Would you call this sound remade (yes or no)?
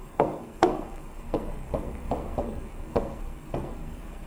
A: yes